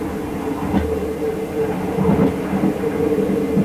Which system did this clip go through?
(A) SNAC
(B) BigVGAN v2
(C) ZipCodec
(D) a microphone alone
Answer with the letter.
D